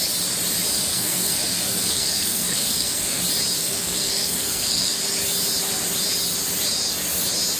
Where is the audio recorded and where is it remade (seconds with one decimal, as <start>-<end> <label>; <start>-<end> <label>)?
0.0-0.9 recorded; 0.9-3.2 remade; 3.2-3.6 recorded; 3.6-5.0 remade; 5.0-7.6 recorded